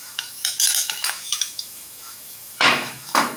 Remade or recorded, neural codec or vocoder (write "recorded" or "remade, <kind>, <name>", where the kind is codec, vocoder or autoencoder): remade, autoencoder, DAC-VAE